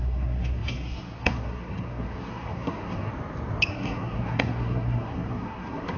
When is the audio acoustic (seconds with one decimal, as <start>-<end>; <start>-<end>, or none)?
3.1-3.7